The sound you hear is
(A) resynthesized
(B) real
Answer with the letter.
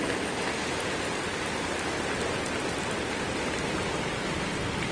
B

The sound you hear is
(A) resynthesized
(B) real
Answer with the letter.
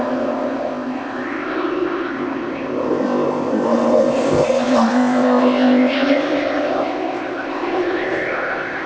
A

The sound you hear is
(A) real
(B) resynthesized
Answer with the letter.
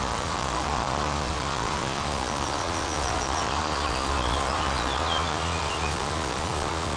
B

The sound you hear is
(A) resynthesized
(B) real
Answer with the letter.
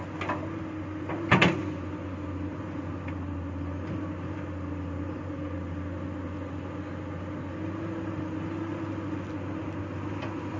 B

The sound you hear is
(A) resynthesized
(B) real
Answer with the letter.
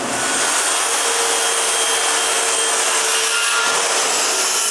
B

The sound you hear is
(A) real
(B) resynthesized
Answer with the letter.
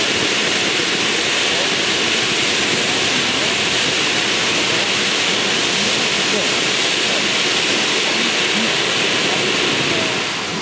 A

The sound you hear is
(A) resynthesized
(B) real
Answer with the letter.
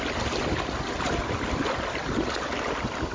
B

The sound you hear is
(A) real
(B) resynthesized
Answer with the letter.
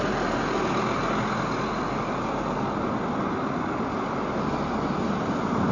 A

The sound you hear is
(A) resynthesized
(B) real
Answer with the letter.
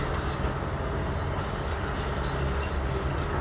B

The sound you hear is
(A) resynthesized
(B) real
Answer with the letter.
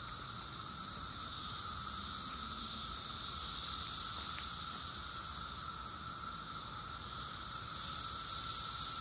B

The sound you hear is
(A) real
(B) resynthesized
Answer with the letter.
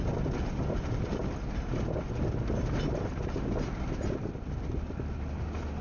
A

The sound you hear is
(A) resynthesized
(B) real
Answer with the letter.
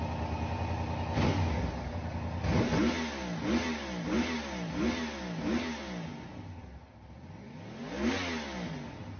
B